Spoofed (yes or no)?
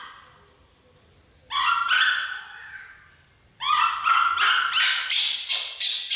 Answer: no